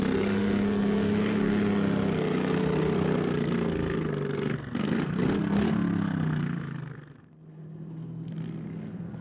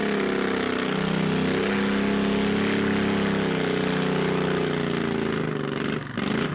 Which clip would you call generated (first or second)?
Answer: first